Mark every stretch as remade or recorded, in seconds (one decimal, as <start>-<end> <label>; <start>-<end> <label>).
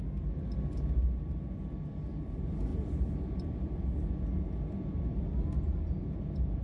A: 0.0-6.6 recorded